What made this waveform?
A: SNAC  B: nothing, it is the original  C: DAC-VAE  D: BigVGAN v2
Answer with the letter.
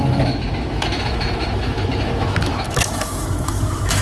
C